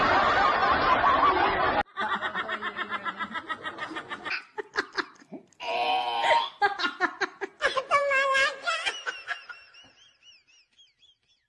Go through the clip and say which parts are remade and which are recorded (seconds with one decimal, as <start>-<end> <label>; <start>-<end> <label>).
0.0-11.5 recorded